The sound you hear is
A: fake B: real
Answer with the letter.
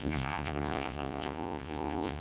A